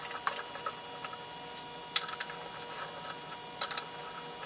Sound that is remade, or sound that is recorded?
recorded